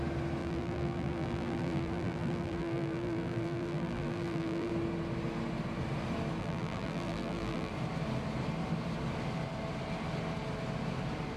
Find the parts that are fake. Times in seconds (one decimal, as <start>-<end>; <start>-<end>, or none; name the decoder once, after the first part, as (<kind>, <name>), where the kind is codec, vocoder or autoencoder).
0.4-4.7 (vocoder, BigVGAN v2); 6.4-7.7